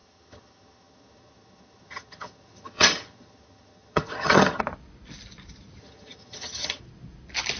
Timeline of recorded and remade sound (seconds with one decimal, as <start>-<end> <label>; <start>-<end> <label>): 0.0-4.6 remade; 4.6-5.8 recorded; 5.8-6.8 remade; 6.8-7.6 recorded